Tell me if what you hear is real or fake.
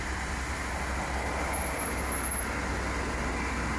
real